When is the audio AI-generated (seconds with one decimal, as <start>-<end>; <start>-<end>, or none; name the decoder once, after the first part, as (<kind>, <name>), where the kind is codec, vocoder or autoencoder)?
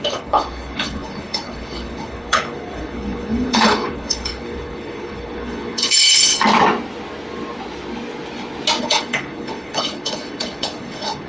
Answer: 0.0-6.3 (codec, HILCodec); 8.8-11.3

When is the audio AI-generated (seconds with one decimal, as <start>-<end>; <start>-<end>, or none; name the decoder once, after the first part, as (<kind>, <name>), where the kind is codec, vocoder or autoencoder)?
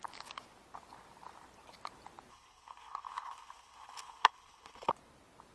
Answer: 2.3-4.9 (codec, HILCodec)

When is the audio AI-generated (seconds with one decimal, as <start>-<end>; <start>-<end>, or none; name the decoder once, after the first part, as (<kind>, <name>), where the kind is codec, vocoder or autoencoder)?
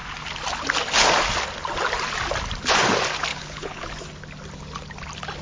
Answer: 3.3-3.9 (codec, HILCodec)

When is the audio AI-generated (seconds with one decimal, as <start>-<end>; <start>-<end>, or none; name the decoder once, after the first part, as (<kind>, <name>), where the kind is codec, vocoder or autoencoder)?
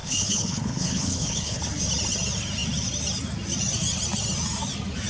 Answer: 0.0-1.6 (codec, HILCodec)